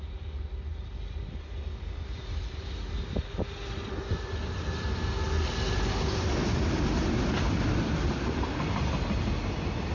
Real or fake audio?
real